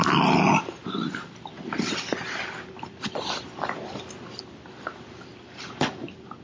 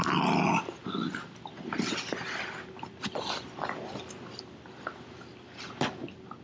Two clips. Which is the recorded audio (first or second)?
second